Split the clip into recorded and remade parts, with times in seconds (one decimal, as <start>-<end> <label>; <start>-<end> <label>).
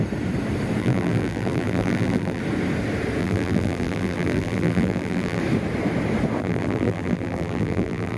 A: 0.0-0.8 recorded; 0.8-2.4 remade; 2.4-3.2 recorded; 3.2-5.4 remade; 5.4-6.4 recorded; 6.4-8.2 remade